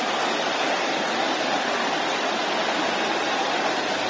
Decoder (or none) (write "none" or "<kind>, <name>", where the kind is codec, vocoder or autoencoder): none